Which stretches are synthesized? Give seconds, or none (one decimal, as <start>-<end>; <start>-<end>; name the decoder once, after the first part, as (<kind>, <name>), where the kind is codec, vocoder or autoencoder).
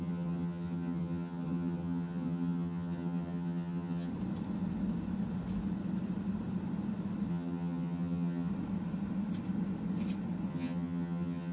0.0-4.1 (vocoder, HiFi-GAN); 7.3-8.5; 10.5-11.5